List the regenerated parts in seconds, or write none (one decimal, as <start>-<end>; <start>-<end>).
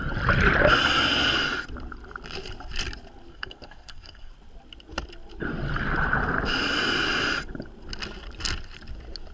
3.3-4.3